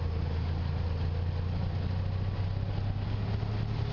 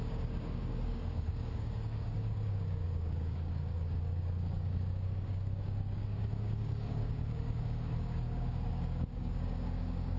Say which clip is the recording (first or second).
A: first